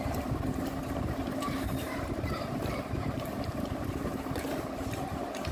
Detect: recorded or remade remade